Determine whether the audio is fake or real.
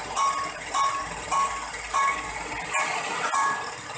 real